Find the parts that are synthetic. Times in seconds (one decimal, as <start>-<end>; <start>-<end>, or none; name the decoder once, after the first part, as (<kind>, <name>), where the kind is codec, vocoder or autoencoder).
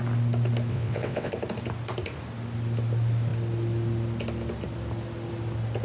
0.7-1.3 (vocoder, WaveNeXt)